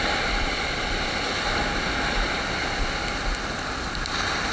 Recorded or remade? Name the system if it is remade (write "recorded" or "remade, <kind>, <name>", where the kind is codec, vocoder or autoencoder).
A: remade, vocoder, BigVGAN v2